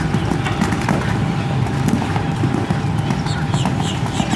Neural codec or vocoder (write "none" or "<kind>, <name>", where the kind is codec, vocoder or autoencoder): none